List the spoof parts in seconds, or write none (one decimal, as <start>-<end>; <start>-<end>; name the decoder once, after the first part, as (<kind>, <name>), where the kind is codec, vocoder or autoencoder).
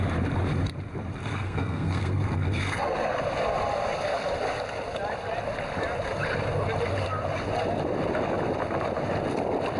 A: 1.2-3.2 (codec, SNAC)